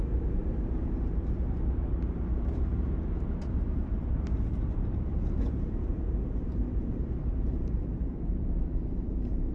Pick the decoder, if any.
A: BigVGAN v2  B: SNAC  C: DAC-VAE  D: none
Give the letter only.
A